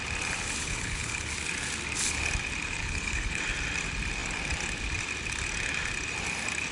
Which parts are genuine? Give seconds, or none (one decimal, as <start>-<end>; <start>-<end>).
0.0-0.6; 1.3-2.8; 3.4-6.7